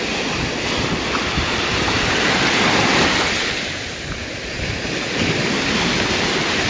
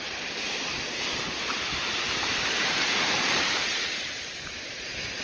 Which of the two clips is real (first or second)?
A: first